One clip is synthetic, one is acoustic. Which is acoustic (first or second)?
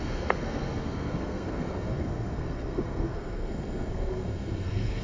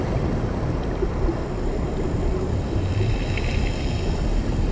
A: second